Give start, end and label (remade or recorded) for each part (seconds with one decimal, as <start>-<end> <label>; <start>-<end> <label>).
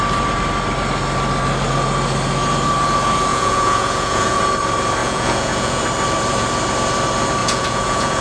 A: 0.0-3.3 recorded; 3.3-4.4 remade; 4.4-5.0 recorded; 5.0-5.8 remade; 5.8-7.4 recorded; 7.4-8.2 remade